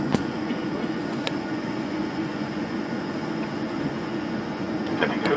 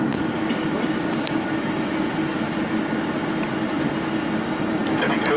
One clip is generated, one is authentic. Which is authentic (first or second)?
second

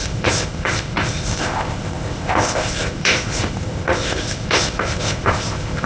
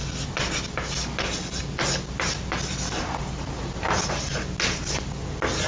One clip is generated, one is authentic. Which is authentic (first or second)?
second